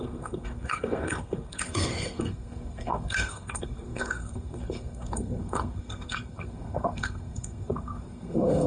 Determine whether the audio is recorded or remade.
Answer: remade